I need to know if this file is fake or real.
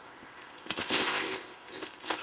fake